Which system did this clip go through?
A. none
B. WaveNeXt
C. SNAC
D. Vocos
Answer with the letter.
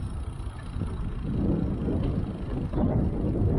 A